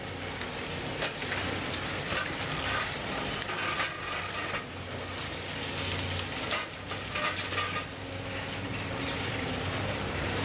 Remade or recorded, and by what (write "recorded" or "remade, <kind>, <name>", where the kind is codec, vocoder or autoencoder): recorded